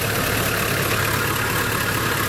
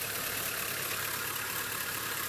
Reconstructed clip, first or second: second